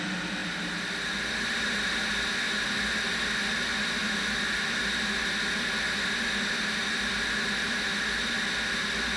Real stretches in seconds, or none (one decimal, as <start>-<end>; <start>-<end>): 0.0-9.2